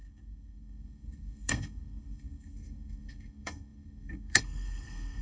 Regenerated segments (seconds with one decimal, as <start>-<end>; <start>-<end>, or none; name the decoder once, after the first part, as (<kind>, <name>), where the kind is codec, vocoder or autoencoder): 0.0-5.2 (codec, SNAC)